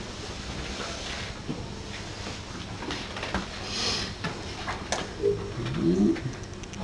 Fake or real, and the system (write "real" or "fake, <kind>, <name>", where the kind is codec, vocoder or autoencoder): real